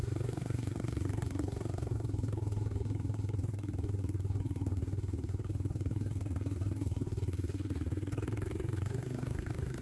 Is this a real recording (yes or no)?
no